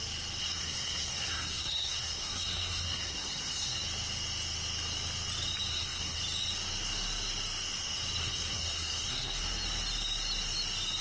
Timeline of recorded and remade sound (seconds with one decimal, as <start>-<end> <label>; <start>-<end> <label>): 0.0-0.4 recorded; 0.4-3.8 remade; 3.8-5.7 recorded; 5.7-6.2 remade; 6.2-8.2 recorded; 8.2-9.4 remade; 9.4-11.0 recorded